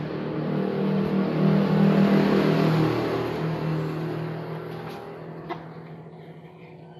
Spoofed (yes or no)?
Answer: no